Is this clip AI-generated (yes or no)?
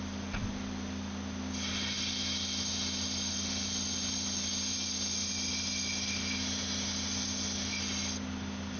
no